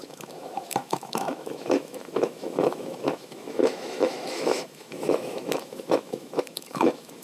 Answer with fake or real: fake